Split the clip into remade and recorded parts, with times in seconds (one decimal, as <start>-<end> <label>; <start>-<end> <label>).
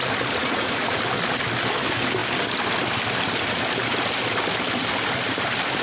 0.0-0.4 recorded; 0.4-1.0 remade; 1.0-5.8 recorded